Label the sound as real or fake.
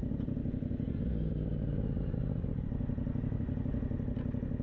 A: real